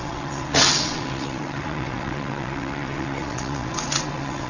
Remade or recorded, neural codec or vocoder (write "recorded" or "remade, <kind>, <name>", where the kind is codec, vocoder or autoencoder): remade, vocoder, WaveNeXt